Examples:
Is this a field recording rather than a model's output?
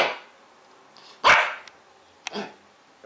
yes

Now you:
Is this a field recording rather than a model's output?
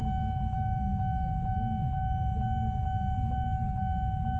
yes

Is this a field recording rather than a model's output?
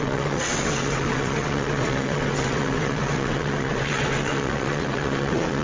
no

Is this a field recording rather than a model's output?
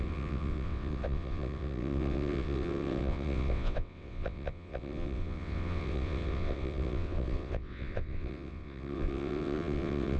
no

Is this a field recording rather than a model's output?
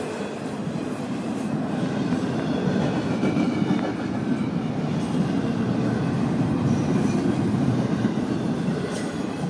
yes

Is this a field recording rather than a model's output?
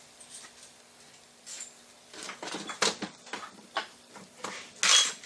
yes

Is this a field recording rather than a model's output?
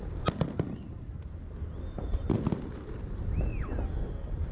yes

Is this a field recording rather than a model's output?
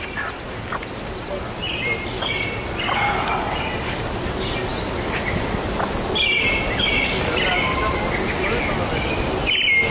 yes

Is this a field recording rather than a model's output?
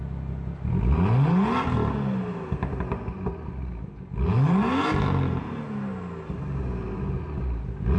yes